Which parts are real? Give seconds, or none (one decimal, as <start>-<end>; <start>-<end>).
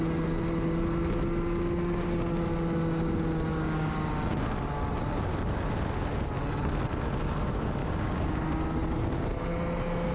0.0-3.5; 4.1-7.8; 8.4-10.1